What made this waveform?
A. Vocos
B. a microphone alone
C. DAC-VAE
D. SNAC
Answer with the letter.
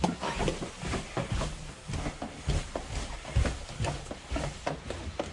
B